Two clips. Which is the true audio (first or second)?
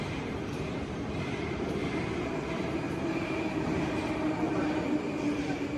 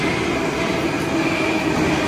second